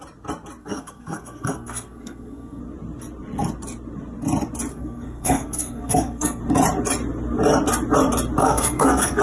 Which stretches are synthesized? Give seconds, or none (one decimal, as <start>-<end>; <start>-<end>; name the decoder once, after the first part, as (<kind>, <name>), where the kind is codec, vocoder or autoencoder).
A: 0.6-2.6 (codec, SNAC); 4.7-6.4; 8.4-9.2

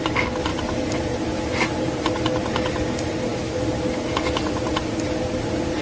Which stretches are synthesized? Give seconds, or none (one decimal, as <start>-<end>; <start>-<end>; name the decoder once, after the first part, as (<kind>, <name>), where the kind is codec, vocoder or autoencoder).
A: 0.5-2.0 (vocoder, BigVGAN v2)

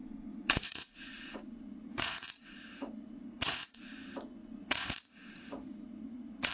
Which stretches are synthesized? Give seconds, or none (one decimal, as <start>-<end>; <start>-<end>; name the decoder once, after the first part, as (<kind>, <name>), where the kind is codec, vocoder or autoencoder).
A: 0.0-3.9 (vocoder, Vocos); 4.4-6.5

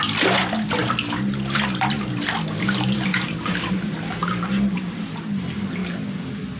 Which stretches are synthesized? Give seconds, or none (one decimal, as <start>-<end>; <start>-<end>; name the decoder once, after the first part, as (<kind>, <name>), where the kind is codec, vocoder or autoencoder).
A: 3.1-3.6 (vocoder, BigVGAN v2); 4.2-5.1

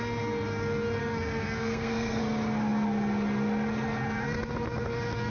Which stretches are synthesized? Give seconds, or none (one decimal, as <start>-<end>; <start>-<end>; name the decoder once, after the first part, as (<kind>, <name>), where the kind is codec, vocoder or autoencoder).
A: 1.0-2.2 (codec, SNAC)

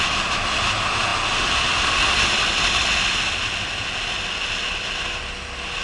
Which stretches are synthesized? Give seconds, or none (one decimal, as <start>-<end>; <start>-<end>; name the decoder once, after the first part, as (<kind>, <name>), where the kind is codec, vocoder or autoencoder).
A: none

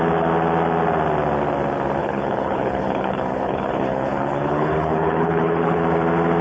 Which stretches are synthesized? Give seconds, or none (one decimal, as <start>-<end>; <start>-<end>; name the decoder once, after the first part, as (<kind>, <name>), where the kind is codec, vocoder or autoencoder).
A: 2.0-5.8 (codec, HILCodec)